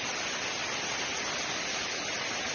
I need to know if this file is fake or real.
real